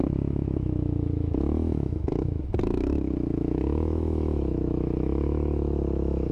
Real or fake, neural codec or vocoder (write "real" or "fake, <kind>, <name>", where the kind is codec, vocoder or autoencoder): fake, autoencoder, DAC-VAE